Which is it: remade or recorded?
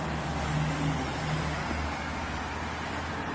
recorded